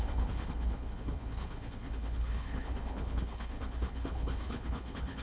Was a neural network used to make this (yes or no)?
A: yes